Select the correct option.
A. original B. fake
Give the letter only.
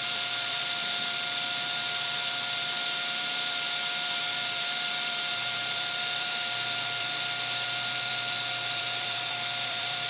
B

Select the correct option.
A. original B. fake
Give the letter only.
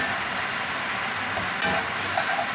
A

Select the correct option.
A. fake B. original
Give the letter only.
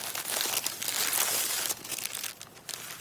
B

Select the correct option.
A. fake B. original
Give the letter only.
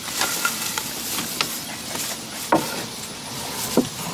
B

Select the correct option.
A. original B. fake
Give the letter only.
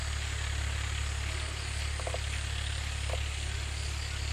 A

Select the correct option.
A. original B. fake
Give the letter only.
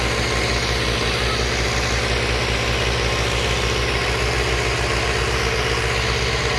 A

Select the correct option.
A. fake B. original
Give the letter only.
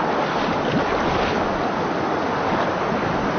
B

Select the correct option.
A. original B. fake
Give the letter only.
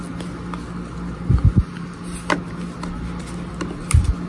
A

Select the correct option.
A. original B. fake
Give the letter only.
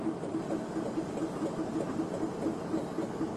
A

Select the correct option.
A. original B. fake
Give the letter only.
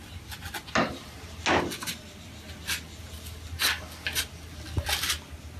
A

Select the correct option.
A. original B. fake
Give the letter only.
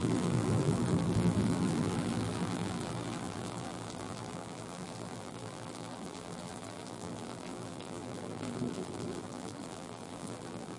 B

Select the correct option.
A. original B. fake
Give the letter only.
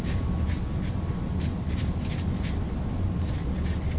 A